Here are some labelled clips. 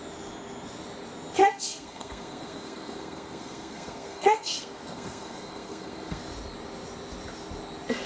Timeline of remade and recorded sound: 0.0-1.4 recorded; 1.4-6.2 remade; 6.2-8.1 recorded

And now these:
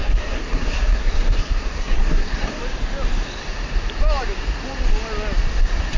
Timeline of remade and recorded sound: 0.0-2.6 remade; 2.6-6.0 recorded

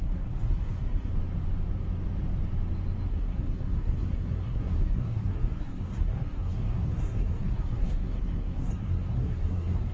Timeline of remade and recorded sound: 0.0-1.1 remade; 1.1-3.1 recorded; 3.1-9.9 remade

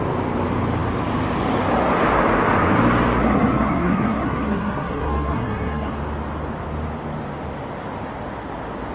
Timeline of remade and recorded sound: 0.0-3.2 recorded; 3.2-5.9 remade; 5.9-8.9 recorded

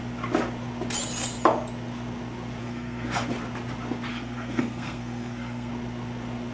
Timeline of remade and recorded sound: 0.0-2.6 recorded; 2.6-3.3 remade; 3.3-4.1 recorded; 4.1-5.7 remade; 5.7-6.5 recorded

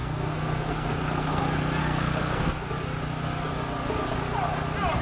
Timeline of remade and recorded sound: 0.0-1.4 remade; 1.4-1.8 recorded; 1.8-2.7 remade; 2.7-5.0 recorded

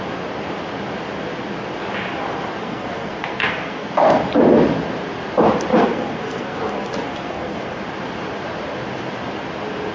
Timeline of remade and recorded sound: 0.0-2.6 recorded; 2.6-4.2 remade; 4.2-5.7 recorded; 5.7-7.8 remade; 7.8-9.9 recorded

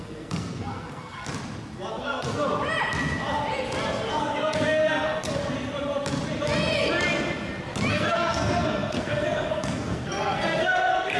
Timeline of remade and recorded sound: 0.0-1.3 remade; 1.3-1.9 recorded; 1.9-2.5 remade; 2.5-4.1 recorded; 4.1-5.4 remade; 5.4-7.9 recorded; 7.9-11.2 remade